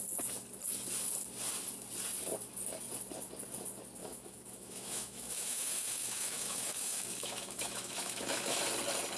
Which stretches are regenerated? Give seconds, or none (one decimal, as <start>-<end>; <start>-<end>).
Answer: 4.0-8.6